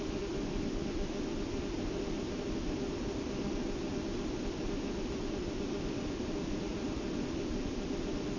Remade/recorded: recorded